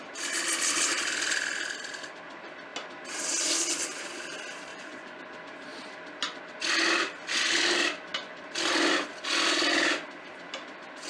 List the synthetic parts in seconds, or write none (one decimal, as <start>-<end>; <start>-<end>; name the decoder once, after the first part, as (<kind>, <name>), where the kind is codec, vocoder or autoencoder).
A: 4.7-5.2 (vocoder, Vocos)